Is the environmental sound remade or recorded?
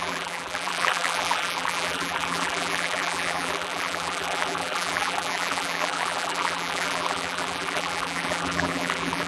remade